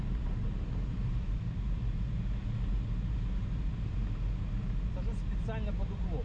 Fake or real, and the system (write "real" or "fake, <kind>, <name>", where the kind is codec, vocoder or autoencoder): real